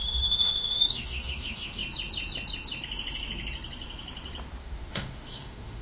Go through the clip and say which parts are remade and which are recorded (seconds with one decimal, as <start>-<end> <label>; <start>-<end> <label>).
0.0-1.8 remade; 1.8-4.6 recorded; 4.6-5.8 remade